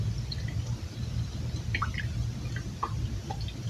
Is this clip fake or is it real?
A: fake